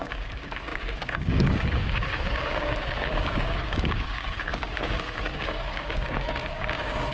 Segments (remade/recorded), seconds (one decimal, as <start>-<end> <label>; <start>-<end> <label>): 0.0-7.1 remade